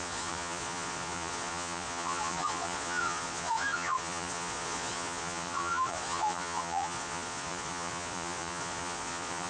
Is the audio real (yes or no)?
no